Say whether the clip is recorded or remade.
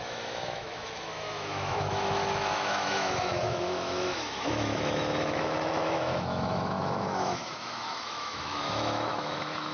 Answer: remade